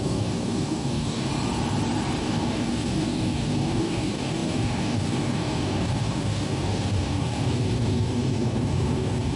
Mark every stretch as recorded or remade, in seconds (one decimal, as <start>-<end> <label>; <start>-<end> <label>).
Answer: 0.0-1.3 remade; 1.3-2.2 recorded; 2.2-9.4 remade